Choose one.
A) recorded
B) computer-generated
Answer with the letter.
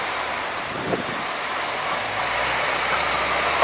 B